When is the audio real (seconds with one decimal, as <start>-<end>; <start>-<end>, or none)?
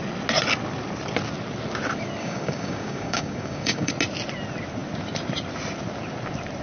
0.0-2.2; 3.9-6.6